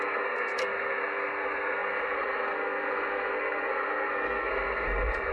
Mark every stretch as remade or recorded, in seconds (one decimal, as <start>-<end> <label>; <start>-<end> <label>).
0.0-5.3 remade